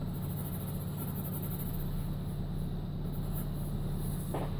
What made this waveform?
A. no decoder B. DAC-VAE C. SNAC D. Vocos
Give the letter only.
A